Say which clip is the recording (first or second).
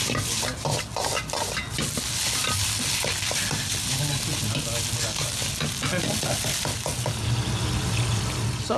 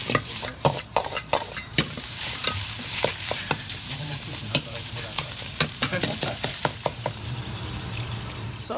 first